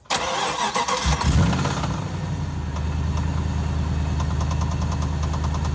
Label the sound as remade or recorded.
recorded